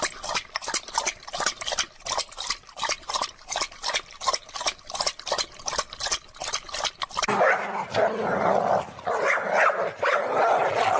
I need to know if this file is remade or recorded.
recorded